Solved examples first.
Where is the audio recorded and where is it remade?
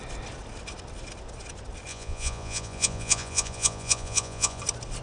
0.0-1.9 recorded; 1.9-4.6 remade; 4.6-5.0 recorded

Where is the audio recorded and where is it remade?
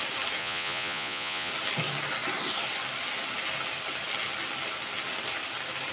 0.0-0.4 recorded; 0.4-1.5 remade; 1.5-5.9 recorded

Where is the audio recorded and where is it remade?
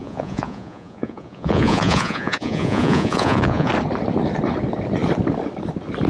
0.0-3.7 remade; 3.7-6.1 recorded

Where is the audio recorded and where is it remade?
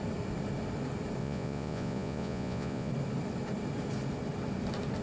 0.0-1.2 recorded; 1.2-2.9 remade; 2.9-5.0 recorded